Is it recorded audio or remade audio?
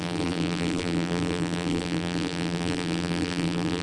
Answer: remade